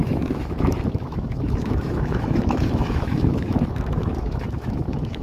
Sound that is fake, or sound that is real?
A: fake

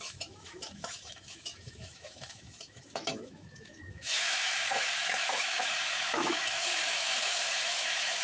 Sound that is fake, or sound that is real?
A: fake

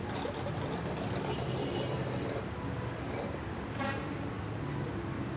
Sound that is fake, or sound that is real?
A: real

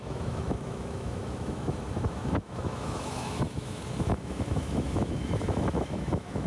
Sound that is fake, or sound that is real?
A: fake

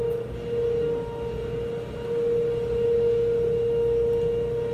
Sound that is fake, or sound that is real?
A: real